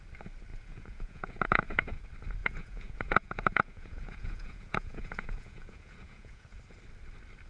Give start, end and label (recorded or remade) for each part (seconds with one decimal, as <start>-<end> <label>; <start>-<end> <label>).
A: 0.0-0.5 recorded; 0.5-2.0 remade; 2.0-2.4 recorded; 2.4-6.6 remade; 6.6-7.5 recorded